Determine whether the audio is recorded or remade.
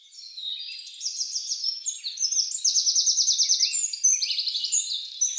recorded